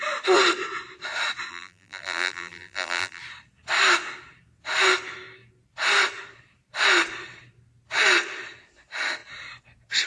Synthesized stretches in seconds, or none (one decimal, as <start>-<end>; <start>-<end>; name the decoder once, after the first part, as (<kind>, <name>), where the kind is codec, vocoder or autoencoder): 1.5-3.2 (vocoder, BigVGAN v2)

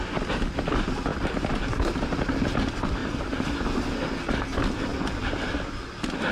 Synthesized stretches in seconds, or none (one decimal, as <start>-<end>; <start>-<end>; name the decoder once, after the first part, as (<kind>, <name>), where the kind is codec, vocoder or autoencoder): 3.0-3.5 (vocoder, BigVGAN v2)